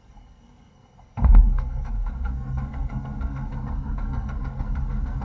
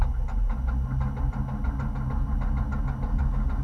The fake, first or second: first